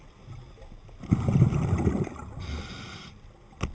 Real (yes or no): yes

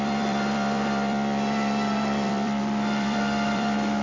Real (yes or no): no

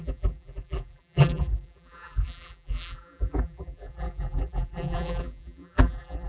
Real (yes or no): no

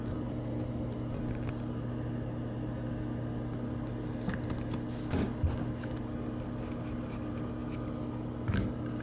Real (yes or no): yes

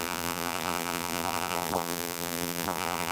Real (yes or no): no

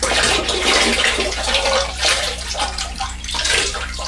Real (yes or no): no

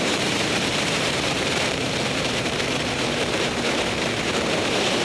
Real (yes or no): no